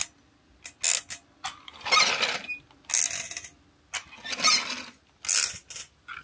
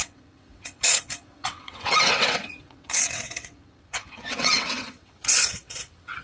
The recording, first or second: first